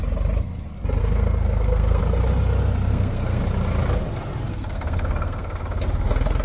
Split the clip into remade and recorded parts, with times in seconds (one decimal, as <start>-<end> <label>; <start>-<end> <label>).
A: 0.0-1.0 recorded; 1.0-2.0 remade; 2.0-2.9 recorded; 2.9-3.4 remade; 3.4-4.5 recorded; 4.5-5.6 remade; 5.6-6.4 recorded